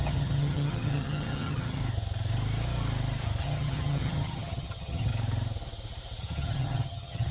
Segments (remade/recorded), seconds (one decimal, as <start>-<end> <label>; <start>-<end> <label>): 0.0-1.8 remade; 1.8-3.4 recorded; 3.4-5.1 remade; 5.1-6.2 recorded; 6.2-7.3 remade

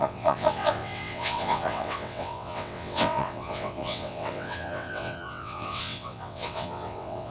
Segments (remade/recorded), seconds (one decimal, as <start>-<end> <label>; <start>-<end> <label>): 0.0-7.3 remade

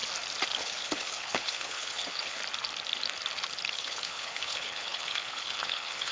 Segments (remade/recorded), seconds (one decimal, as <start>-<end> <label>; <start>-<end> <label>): 0.0-0.6 recorded; 0.6-2.4 remade; 2.4-3.7 recorded; 3.7-6.1 remade

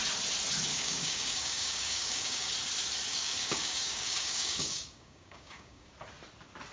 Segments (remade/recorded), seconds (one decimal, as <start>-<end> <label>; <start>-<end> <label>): 0.0-0.7 recorded; 0.7-2.5 remade; 2.5-3.1 recorded; 3.1-5.9 remade; 5.9-6.7 recorded